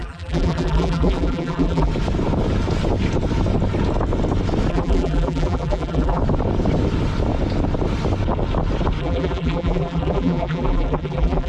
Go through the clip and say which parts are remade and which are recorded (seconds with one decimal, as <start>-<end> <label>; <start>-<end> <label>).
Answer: 0.0-1.9 remade; 1.9-4.7 recorded; 4.7-6.2 remade; 6.2-9.0 recorded; 9.0-11.5 remade